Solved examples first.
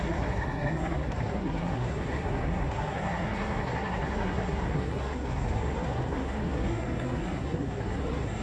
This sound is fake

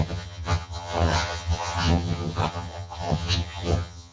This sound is fake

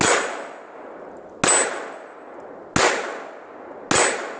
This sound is real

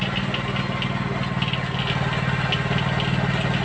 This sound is real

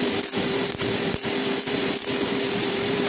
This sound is fake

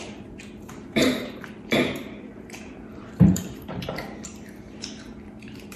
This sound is fake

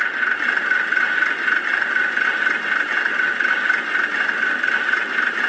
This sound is real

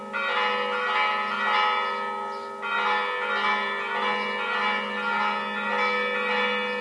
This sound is real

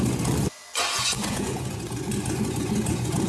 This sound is fake